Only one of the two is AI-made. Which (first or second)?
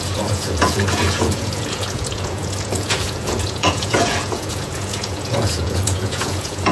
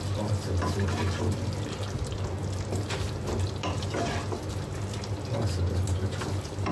first